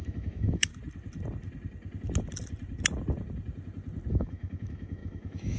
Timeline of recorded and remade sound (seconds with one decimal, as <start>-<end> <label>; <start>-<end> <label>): 0.0-0.7 remade; 0.7-4.1 recorded; 4.1-5.6 remade